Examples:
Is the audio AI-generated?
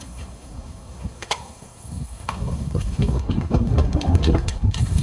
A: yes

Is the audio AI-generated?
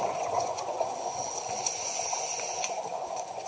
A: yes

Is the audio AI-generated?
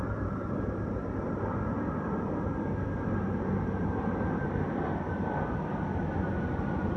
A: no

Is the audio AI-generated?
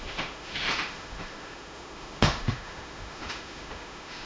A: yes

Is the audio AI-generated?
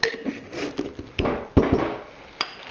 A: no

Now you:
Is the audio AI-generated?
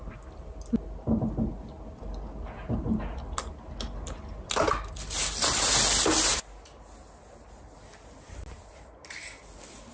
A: no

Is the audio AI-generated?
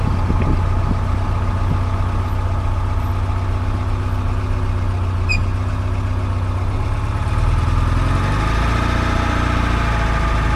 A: no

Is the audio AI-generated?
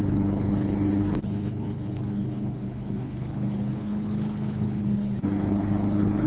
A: yes